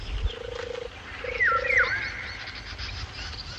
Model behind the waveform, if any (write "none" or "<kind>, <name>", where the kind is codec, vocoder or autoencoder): none